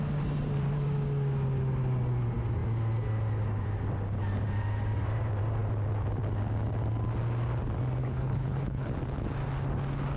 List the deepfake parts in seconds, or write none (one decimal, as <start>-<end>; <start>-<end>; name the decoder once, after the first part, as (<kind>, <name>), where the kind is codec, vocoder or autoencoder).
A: 8.0-8.9 (codec, HILCodec)